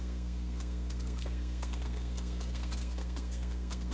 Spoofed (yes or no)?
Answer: yes